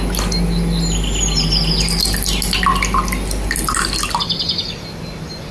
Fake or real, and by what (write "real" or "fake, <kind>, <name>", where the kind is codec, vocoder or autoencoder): real